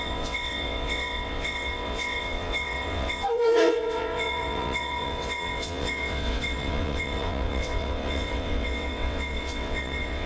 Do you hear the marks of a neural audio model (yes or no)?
yes